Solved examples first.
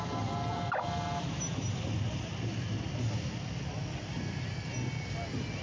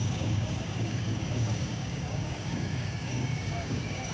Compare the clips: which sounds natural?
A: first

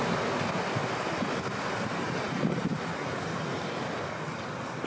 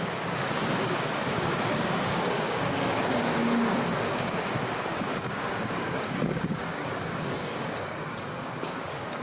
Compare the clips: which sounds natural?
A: first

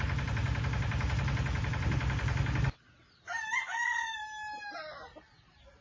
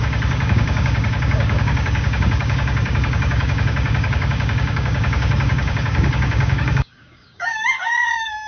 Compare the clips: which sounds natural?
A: first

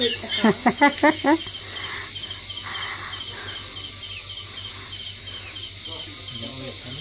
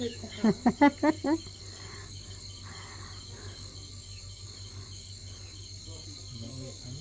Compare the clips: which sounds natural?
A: first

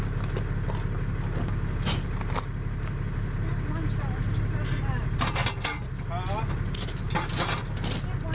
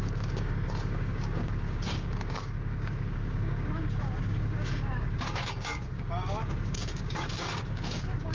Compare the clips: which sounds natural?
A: first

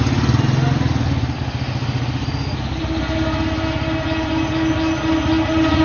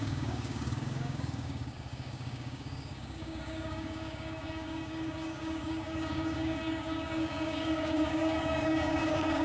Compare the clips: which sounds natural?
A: first